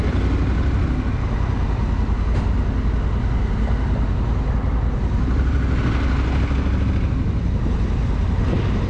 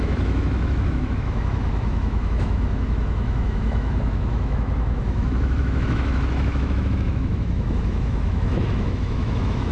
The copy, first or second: second